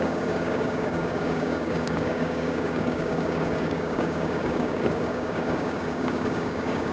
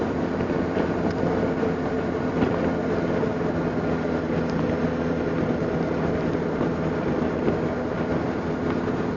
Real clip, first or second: second